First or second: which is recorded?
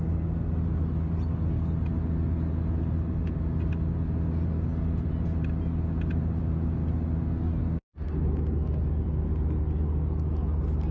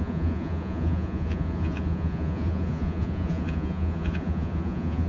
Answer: first